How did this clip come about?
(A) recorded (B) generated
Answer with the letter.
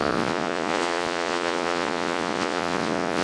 B